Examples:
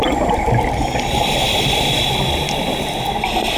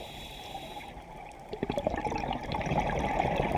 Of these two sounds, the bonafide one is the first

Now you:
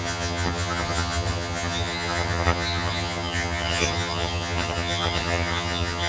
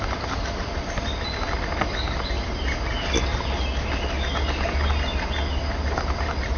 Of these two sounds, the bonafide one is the second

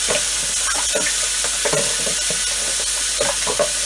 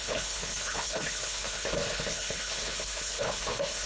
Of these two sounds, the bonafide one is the first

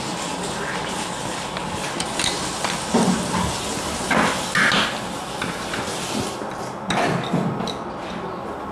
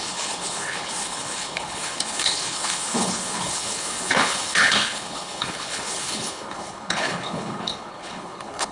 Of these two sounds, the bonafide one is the first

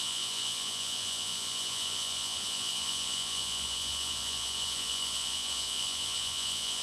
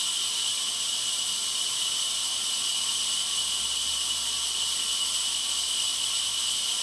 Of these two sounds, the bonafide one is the second